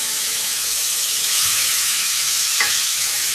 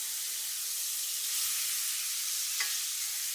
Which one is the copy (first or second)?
first